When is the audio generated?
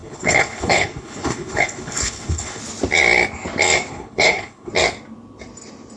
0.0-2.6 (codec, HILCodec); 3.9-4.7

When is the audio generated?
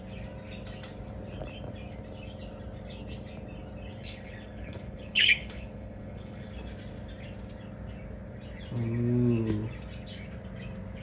4.0-6.5 (codec, HILCodec)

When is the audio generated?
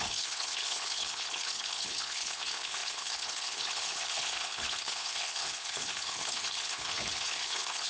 0.0-7.9 (codec, HILCodec)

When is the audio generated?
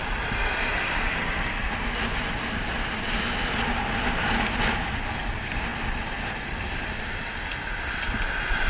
none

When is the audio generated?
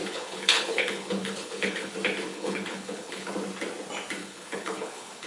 0.0-1.9 (codec, HILCodec); 2.3-3.3; 4.2-5.3